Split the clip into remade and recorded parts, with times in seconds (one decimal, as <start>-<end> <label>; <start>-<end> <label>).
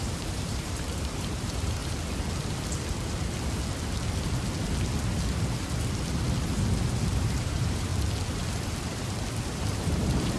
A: 0.0-1.8 remade; 1.8-7.0 recorded; 7.0-7.9 remade; 7.9-8.5 recorded; 8.5-10.4 remade